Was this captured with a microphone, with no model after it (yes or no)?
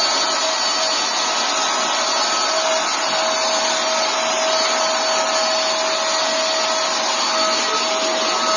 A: yes